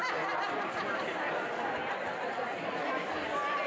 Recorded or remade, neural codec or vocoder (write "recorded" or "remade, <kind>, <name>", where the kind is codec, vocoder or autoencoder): recorded